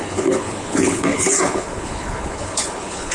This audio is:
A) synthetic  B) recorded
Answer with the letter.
A